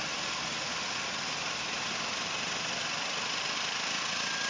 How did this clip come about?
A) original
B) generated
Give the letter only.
A